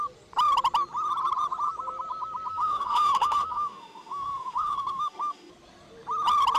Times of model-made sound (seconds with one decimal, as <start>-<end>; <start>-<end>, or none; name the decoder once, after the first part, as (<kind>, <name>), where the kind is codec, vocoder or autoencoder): 2.5-5.5 (autoencoder, DAC-VAE)